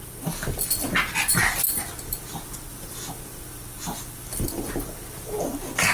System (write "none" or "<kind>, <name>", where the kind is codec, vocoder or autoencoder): none